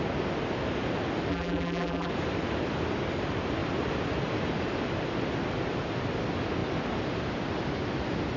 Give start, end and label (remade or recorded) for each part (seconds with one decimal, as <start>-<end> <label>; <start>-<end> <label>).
0.0-1.3 recorded; 1.3-2.1 remade; 2.1-8.4 recorded

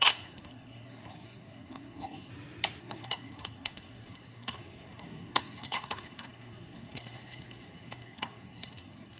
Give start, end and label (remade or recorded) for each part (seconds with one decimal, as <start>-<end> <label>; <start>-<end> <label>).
0.0-2.3 remade; 2.3-2.8 recorded; 2.8-9.2 remade

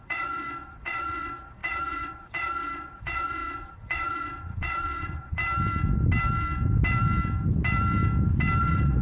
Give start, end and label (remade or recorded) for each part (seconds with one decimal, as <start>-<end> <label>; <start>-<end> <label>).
0.0-5.4 remade; 5.4-8.6 recorded; 8.6-9.0 remade

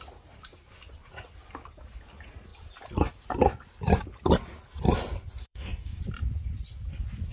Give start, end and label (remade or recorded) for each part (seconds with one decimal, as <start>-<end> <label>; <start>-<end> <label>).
0.0-5.4 recorded; 5.4-6.0 remade; 6.0-7.3 recorded

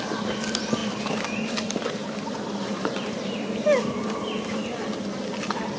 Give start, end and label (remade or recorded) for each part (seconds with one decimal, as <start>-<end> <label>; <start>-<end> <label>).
0.0-5.8 recorded

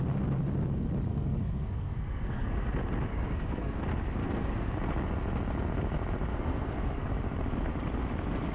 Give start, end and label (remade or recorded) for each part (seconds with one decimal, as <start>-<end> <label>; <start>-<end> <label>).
0.0-1.1 recorded; 1.1-2.7 remade; 2.7-3.1 recorded; 3.1-3.8 remade; 3.8-4.2 recorded; 4.2-4.7 remade; 4.7-6.3 recorded; 6.3-7.1 remade; 7.1-8.5 recorded

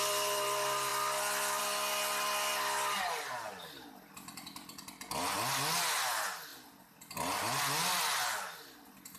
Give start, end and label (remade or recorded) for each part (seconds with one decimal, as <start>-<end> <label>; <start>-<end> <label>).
0.0-9.2 recorded